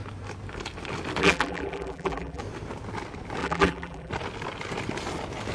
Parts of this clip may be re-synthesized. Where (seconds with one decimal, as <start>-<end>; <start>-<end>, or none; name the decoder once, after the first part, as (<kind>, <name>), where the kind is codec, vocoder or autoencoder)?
1.2-2.4 (vocoder, BigVGAN v2); 3.4-4.1